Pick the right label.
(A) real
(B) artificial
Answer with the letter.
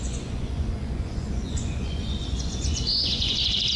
B